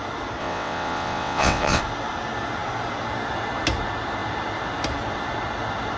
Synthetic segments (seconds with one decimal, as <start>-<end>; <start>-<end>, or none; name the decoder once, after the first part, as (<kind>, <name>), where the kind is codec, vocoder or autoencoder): 0.4-1.8 (vocoder, WaveNeXt)